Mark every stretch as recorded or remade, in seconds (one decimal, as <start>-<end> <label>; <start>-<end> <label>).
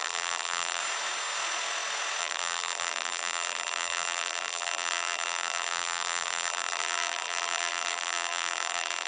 0.0-0.8 remade; 0.8-2.2 recorded; 2.2-9.1 remade